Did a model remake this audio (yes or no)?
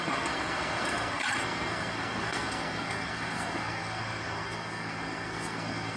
yes